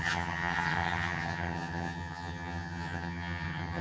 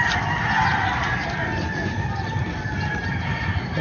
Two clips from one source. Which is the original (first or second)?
second